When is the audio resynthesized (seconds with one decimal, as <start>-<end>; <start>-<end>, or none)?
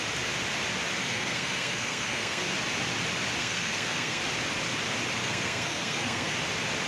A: 1.0-2.4; 3.4-4.2; 5.2-6.3